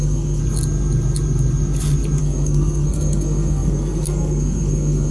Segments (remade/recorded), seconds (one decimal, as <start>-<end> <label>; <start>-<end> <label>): 0.0-0.4 remade; 0.4-2.2 recorded; 2.2-5.1 remade